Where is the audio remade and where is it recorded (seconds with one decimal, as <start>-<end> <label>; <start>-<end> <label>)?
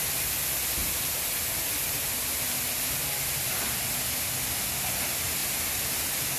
0.0-6.4 recorded